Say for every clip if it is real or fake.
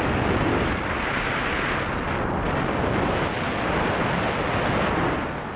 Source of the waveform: real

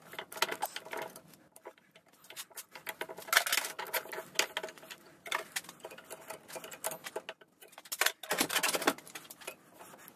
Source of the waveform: real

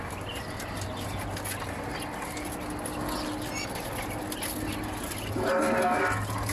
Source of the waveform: real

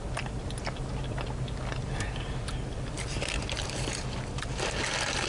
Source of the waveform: real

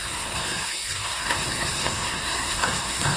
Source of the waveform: fake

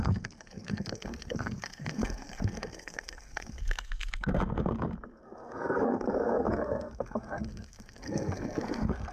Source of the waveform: fake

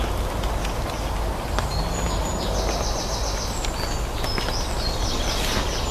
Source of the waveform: real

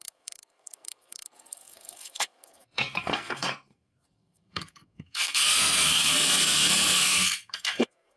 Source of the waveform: fake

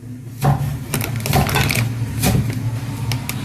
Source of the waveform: real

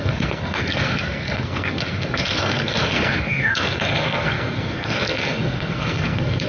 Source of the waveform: fake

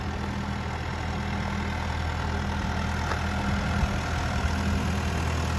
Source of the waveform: real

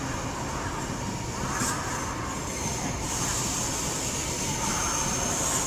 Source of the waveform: real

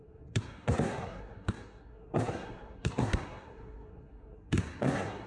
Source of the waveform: fake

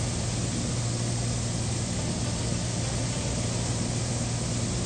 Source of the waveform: real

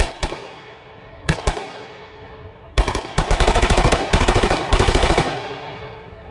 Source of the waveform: fake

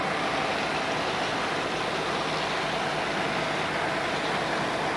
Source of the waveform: real